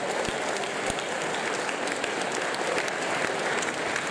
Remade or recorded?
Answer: recorded